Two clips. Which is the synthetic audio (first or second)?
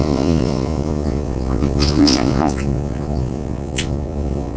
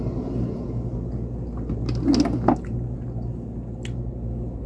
first